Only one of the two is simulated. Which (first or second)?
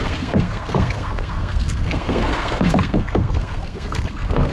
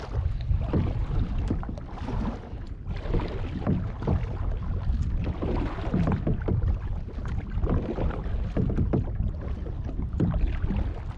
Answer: first